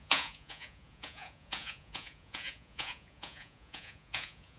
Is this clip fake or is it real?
fake